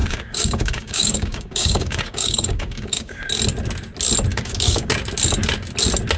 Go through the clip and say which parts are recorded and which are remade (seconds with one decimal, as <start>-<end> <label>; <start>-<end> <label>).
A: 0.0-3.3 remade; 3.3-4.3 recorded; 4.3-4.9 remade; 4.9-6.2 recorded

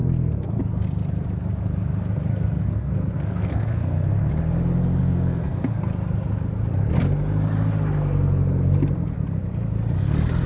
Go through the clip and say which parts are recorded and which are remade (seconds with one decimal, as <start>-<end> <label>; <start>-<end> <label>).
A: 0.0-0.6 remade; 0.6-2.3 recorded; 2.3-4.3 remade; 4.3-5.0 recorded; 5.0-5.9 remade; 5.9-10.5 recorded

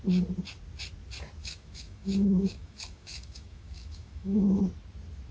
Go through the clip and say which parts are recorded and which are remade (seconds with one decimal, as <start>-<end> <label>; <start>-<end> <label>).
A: 0.0-1.4 recorded; 1.4-4.6 remade; 4.6-5.3 recorded

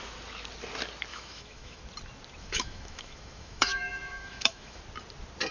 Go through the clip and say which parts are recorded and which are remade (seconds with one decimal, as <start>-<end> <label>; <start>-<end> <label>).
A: 0.0-1.1 recorded; 1.1-1.8 remade; 1.8-2.4 recorded; 2.4-4.8 remade; 4.8-5.5 recorded

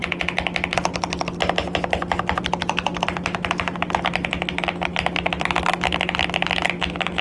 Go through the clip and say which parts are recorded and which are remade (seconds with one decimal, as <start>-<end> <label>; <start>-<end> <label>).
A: 0.0-7.2 recorded

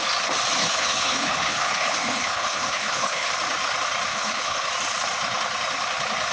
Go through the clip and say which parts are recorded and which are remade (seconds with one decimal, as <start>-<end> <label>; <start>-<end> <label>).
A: 0.0-0.6 recorded; 0.6-3.3 remade; 3.3-4.1 recorded; 4.1-4.7 remade; 4.7-6.3 recorded

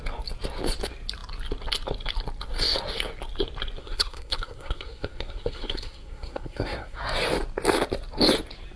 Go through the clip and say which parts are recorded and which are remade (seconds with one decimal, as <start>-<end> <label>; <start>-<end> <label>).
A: 0.0-3.8 recorded; 3.8-7.0 remade; 7.0-8.8 recorded